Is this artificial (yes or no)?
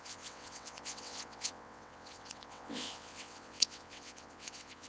yes